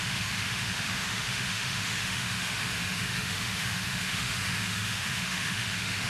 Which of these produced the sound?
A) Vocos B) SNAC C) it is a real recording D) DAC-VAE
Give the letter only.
D